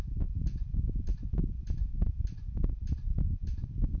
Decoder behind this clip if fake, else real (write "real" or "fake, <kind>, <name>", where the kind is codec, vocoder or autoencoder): real